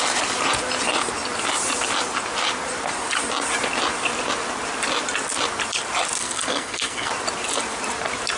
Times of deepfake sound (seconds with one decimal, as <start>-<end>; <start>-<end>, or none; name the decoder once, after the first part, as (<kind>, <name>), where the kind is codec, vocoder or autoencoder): 6.2-7.1 (codec, SNAC)